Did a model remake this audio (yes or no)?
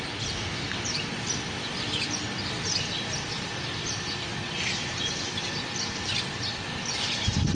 no